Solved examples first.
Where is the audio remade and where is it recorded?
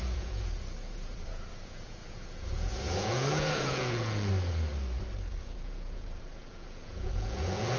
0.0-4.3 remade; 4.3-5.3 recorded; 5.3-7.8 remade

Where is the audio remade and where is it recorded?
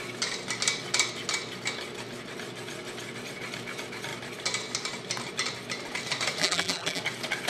0.0-6.4 recorded; 6.4-7.0 remade; 7.0-7.5 recorded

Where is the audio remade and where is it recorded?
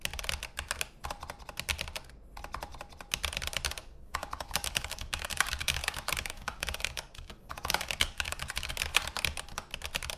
0.0-3.8 recorded; 3.8-8.7 remade; 8.7-10.2 recorded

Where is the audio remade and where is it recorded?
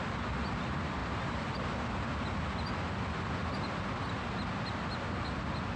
0.0-5.8 recorded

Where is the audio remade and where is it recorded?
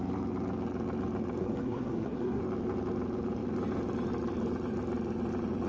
0.0-1.4 recorded; 1.4-2.4 remade; 2.4-5.7 recorded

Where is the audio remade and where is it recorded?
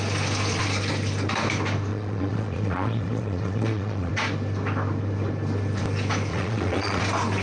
0.0-1.9 recorded; 1.9-4.1 remade; 4.1-6.3 recorded; 6.3-7.0 remade; 7.0-7.4 recorded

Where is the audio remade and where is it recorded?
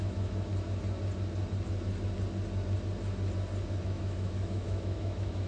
0.0-0.5 remade; 0.5-3.8 recorded; 3.8-5.5 remade